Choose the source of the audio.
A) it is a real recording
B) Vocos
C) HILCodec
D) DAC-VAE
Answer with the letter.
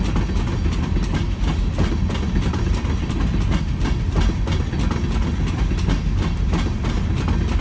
A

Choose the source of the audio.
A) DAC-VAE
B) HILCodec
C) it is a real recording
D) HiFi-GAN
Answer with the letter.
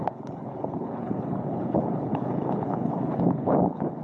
B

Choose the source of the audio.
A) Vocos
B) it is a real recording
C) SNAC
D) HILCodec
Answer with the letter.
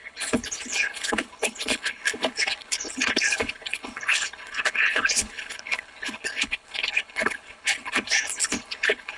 D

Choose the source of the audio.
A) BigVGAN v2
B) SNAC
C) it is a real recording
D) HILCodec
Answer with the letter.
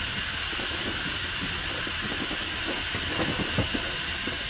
C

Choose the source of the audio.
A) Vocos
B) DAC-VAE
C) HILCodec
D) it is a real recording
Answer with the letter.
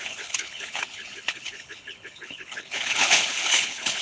C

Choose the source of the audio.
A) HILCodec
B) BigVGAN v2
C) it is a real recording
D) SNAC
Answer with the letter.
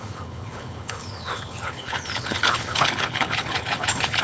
A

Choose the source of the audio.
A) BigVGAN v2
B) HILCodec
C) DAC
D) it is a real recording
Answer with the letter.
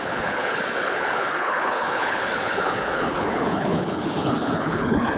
B